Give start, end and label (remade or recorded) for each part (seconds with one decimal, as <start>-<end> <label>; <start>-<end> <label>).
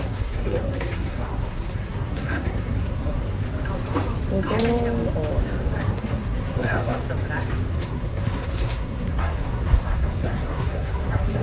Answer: 0.0-3.4 remade; 3.4-5.8 recorded; 5.8-7.0 remade; 7.0-7.7 recorded; 7.7-11.4 remade